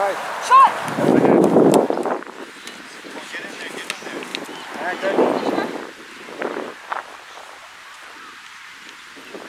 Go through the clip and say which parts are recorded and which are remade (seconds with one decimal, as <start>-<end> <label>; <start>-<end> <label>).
0.0-9.5 recorded